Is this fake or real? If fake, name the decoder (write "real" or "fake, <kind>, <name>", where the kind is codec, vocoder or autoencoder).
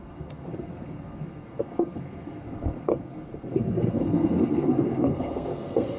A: fake, codec, SNAC